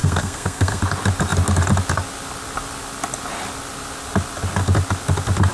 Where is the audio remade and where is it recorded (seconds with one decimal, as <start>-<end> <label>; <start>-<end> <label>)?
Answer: 0.0-0.8 remade; 0.8-5.5 recorded